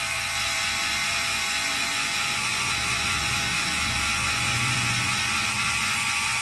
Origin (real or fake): fake